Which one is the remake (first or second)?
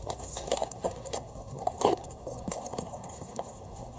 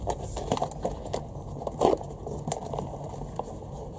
first